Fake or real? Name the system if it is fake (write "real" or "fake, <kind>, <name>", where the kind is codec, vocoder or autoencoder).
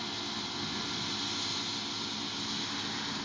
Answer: real